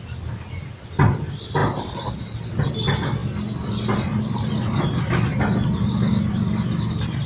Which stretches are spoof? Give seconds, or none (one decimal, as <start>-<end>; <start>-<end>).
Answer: 1.6-2.6; 3.2-4.2